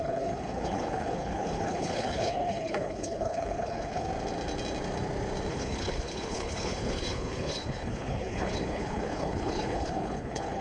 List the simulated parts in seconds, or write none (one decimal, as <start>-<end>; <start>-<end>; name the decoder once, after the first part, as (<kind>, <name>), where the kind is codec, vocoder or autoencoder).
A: 0.0-4.1 (codec, HILCodec); 5.5-10.6